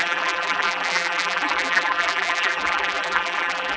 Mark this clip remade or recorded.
remade